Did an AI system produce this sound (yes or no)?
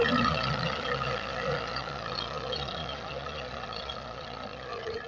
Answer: yes